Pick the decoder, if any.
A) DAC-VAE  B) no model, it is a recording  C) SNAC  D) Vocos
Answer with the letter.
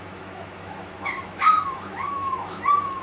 A